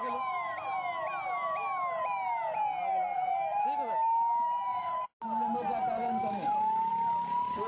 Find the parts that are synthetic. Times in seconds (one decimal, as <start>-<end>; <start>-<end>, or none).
6.0-6.9